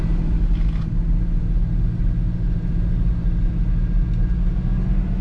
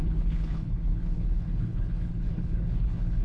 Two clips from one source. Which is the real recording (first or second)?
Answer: first